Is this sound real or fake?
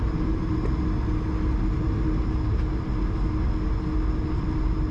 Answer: real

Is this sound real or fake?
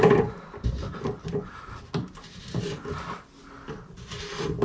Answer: real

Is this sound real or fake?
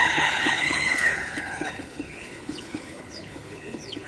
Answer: fake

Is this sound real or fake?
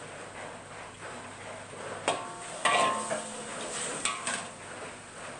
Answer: real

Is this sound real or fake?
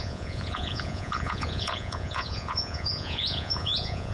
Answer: fake